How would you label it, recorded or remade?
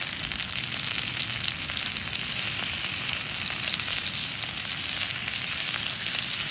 recorded